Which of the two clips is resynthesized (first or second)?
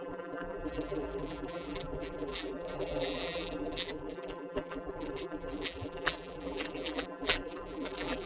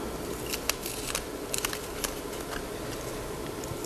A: first